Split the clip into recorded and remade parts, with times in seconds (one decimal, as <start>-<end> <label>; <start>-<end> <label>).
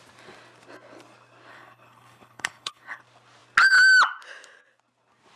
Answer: 0.0-1.5 recorded; 1.5-3.0 remade; 3.0-5.4 recorded